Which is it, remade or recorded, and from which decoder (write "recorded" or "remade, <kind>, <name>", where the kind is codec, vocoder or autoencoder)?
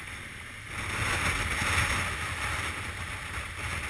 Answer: recorded